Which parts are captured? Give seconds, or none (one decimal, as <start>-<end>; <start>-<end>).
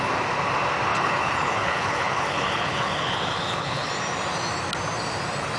0.0-0.9; 3.9-5.6